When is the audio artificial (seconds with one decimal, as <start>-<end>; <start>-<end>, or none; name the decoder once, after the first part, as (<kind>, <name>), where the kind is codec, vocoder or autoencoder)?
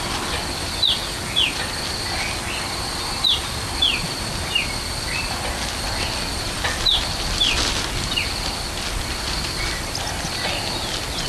none